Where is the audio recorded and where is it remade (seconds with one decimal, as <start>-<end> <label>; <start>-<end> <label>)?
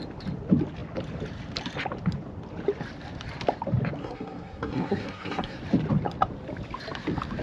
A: 0.0-4.0 recorded; 4.0-5.6 remade; 5.6-7.4 recorded